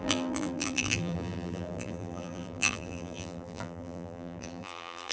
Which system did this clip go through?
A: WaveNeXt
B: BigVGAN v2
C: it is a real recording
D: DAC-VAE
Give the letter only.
B